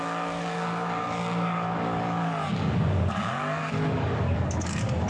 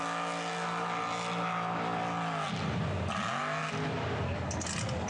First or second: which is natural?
second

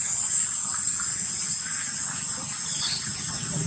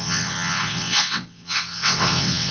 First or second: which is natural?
first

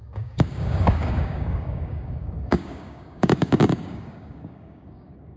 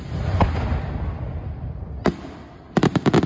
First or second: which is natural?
second